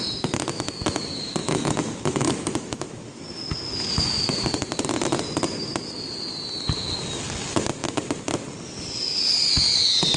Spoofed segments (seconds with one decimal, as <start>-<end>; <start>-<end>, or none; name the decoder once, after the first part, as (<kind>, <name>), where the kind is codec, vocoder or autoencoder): 1.4-3.2 (autoencoder, DAC-VAE)